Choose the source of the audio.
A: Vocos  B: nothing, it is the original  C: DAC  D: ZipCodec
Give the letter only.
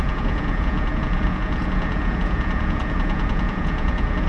A